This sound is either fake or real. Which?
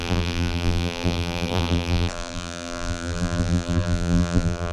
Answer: fake